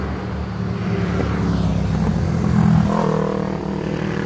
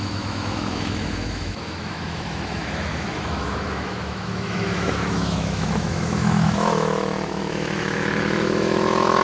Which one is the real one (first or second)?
first